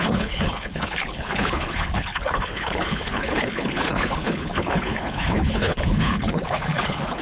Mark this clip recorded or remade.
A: remade